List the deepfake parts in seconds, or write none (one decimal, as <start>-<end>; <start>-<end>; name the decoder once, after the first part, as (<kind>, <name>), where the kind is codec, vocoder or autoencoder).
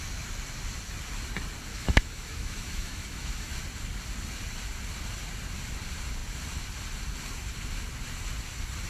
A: 1.7-3.5 (autoencoder, DAC-VAE)